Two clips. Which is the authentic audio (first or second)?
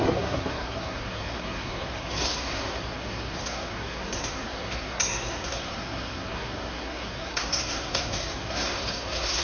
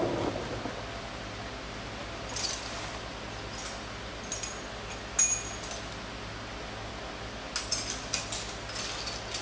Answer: second